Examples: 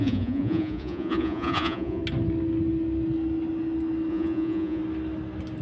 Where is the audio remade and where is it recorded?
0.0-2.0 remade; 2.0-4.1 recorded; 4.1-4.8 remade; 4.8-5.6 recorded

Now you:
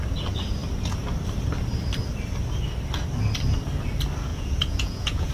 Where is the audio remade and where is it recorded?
0.0-4.3 recorded; 4.3-5.3 remade

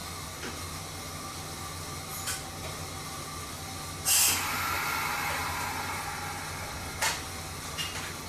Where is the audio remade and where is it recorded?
0.0-8.3 recorded